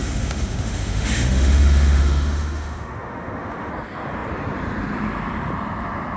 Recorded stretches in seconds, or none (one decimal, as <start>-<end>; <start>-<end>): 3.7-6.2